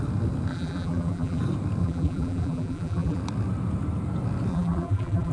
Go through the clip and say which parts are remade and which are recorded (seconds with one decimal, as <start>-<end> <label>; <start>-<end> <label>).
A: 0.0-0.5 recorded; 0.5-1.4 remade; 1.4-1.8 recorded; 1.8-3.2 remade; 3.2-4.5 recorded; 4.5-5.3 remade